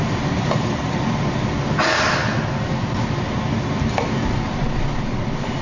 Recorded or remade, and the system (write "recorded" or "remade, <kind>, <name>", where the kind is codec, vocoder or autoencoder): recorded